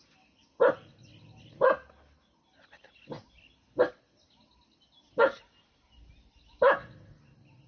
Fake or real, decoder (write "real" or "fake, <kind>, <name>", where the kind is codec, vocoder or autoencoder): real